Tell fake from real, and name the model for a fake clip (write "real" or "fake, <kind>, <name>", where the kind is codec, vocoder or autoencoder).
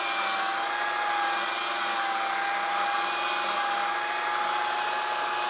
real